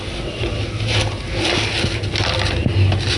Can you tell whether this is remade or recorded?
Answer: recorded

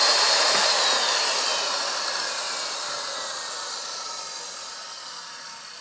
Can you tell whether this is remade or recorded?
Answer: recorded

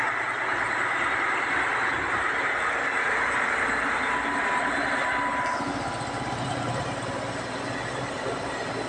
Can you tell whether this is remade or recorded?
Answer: recorded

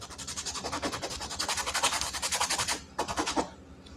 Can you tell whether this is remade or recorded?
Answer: recorded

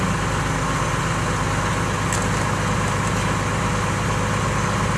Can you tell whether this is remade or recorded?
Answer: recorded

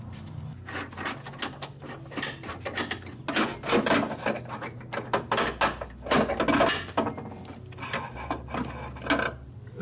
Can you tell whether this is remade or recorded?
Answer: recorded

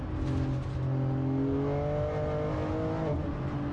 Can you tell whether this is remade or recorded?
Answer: recorded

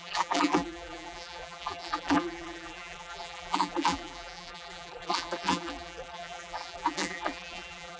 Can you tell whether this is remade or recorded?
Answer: remade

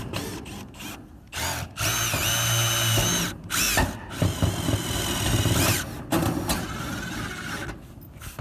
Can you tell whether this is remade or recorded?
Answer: recorded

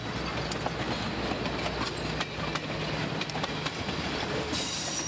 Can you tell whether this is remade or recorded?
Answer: recorded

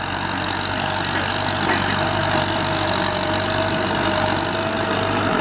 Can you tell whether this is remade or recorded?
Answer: recorded